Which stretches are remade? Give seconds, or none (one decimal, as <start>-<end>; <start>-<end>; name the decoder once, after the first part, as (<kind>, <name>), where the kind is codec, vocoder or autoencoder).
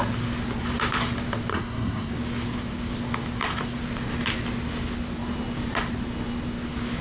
1.5-2.1 (codec, SNAC)